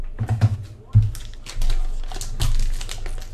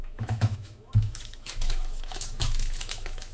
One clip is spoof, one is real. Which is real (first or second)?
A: first